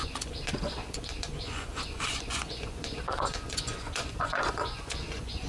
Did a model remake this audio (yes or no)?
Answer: yes